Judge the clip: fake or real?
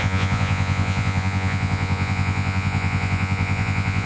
fake